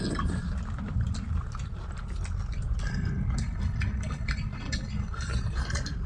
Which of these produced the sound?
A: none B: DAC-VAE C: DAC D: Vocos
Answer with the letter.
A